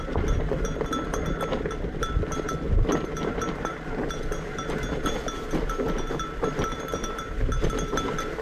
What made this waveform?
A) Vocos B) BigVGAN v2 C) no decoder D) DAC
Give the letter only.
C